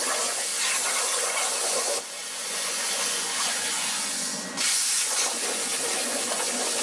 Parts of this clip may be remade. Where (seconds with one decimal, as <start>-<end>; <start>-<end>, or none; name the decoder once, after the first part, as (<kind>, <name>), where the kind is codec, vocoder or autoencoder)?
0.0-0.5 (vocoder, Vocos); 1.0-6.8